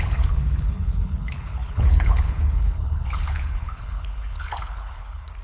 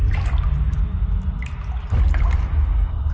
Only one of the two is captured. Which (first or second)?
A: second